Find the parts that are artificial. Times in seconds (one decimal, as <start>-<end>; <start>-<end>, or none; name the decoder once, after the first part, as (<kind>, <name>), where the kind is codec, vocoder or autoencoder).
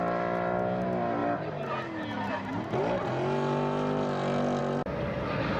none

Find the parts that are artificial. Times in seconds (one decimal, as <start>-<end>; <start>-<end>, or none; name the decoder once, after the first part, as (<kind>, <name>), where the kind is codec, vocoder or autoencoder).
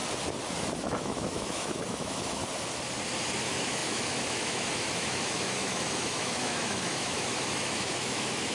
0.8-2.4 (autoencoder, DAC-VAE); 3.4-8.5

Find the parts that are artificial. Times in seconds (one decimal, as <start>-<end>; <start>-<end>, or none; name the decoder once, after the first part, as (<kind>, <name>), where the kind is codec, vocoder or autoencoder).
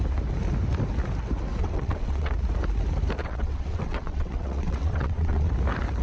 1.6-2.3 (vocoder, WaveNeXt); 3.2-5.5